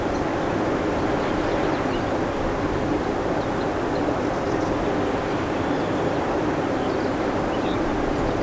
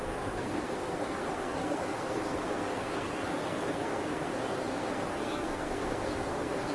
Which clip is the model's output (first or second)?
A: second